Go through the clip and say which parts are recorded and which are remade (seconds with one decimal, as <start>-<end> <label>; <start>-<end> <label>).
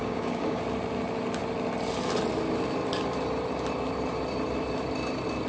0.0-0.6 remade; 0.6-5.5 recorded